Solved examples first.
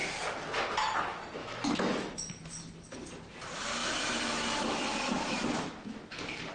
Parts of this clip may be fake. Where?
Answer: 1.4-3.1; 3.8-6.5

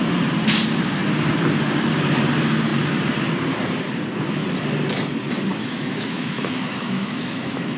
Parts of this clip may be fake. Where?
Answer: 5.6-7.8

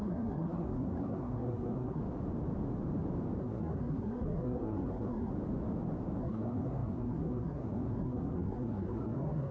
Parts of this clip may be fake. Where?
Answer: 0.0-2.0; 3.4-5.3; 6.2-9.5

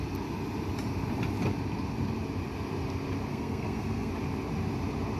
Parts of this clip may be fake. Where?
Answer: 3.3-4.1

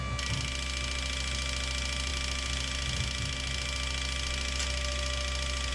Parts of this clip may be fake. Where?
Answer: none

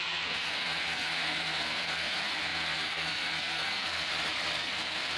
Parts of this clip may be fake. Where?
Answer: 0.0-4.1; 4.6-5.2